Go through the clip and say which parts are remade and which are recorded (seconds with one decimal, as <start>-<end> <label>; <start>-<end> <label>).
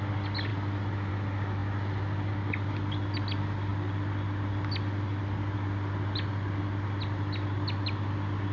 0.0-8.5 recorded